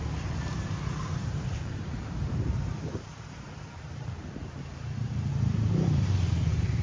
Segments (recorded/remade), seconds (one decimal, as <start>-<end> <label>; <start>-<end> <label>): 0.0-1.2 recorded; 1.2-5.3 remade; 5.3-6.8 recorded